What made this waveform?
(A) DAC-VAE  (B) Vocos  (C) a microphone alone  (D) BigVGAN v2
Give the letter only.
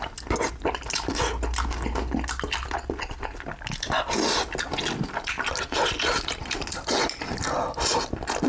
C